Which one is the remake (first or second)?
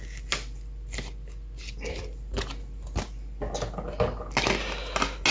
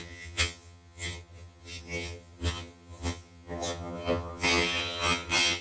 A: second